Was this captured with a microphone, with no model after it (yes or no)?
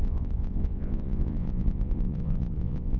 no